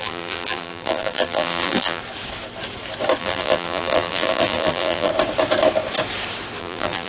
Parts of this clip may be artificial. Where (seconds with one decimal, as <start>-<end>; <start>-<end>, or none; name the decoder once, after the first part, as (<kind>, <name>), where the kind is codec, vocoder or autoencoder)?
0.0-2.0 (vocoder, BigVGAN v2); 3.2-5.1; 6.6-7.1